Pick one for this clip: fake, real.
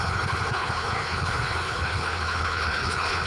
fake